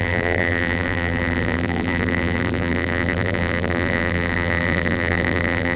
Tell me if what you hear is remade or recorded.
remade